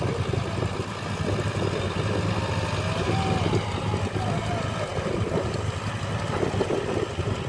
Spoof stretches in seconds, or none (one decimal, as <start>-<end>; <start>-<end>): none

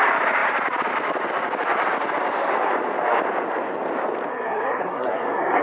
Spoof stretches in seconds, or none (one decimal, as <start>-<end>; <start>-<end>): 4.3-5.6

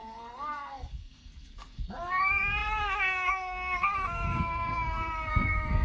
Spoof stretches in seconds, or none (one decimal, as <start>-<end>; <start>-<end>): 0.0-5.8